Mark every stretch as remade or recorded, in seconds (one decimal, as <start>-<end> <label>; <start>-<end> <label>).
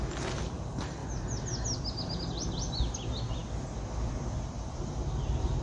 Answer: 0.0-5.6 recorded